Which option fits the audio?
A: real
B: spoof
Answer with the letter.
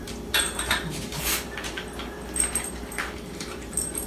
B